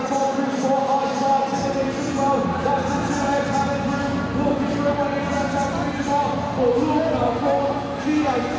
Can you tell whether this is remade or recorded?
recorded